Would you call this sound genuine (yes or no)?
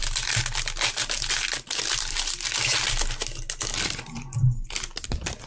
yes